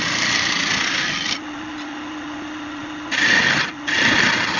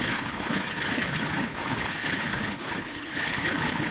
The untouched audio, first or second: first